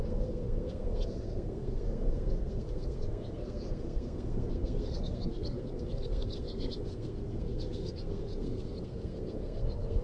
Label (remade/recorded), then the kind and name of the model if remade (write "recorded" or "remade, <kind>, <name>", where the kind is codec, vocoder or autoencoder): remade, codec, SNAC